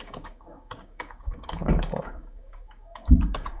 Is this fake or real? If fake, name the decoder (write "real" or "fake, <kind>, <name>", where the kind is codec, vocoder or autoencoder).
fake, codec, DAC